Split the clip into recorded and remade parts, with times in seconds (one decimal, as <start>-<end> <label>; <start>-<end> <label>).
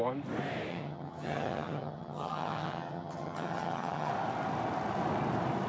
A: 0.0-0.7 recorded; 0.7-4.1 remade; 4.1-5.7 recorded